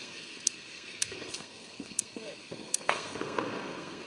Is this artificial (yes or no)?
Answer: yes